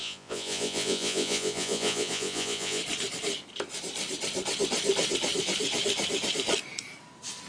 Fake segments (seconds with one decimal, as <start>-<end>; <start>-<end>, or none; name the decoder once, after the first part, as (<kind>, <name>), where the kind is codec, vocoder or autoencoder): 0.0-2.8 (vocoder, Vocos)